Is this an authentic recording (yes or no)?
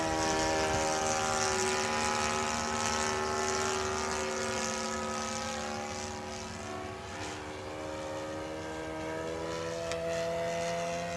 yes